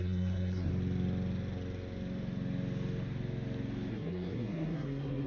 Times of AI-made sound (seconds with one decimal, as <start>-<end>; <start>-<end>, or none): 0.0-0.7; 3.9-5.3